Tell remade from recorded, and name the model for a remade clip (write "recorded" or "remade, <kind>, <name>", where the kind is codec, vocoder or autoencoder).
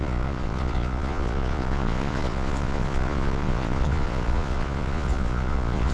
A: remade, vocoder, Vocos